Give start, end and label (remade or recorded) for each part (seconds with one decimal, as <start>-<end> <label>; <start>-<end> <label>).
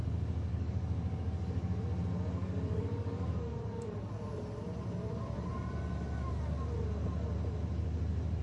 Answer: 0.0-0.5 recorded; 0.5-1.8 remade; 1.8-2.4 recorded; 2.4-4.1 remade; 4.1-8.4 recorded